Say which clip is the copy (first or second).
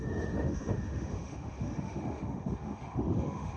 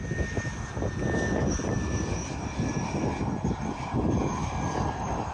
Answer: first